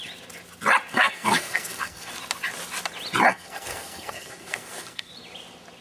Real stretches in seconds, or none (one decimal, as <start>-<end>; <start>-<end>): 0.0-0.9; 2.1-3.3; 5.1-5.8